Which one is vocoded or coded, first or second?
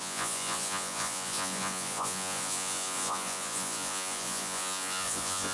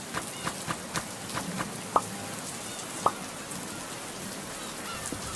first